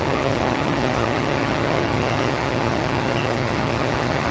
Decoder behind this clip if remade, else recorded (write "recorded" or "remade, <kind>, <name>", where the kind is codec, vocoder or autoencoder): remade, vocoder, HiFi-GAN